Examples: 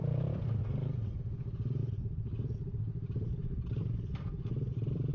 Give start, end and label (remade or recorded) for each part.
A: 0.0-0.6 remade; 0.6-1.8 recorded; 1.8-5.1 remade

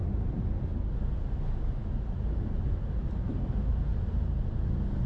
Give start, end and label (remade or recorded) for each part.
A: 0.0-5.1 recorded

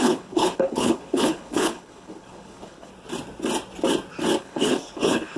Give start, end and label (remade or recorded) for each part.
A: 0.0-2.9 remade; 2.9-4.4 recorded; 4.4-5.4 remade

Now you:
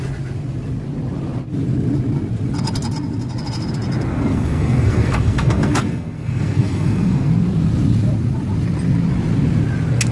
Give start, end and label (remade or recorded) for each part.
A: 0.0-4.1 recorded; 4.1-7.3 remade; 7.3-10.1 recorded

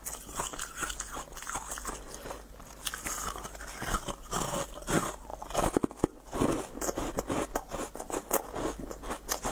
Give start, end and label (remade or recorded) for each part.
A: 0.0-9.5 recorded

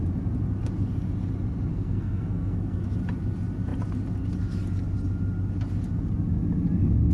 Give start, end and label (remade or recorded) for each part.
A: 0.0-1.7 recorded; 1.7-2.8 remade; 2.8-7.1 recorded

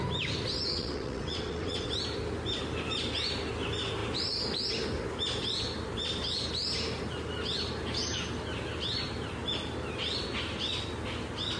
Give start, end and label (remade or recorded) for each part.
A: 0.0-0.7 recorded; 0.7-1.9 remade; 1.9-11.6 recorded